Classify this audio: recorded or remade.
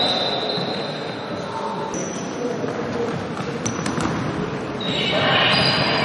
recorded